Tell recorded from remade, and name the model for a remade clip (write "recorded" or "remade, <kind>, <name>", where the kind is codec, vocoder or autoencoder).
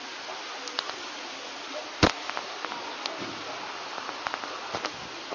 recorded